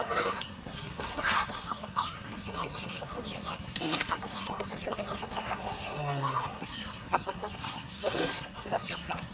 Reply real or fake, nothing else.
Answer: fake